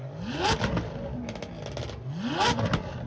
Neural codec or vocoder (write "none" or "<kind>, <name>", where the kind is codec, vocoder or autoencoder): none